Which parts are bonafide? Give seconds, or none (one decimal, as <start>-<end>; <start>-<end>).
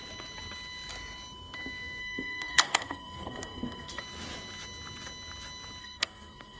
0.0-2.0; 4.0-5.8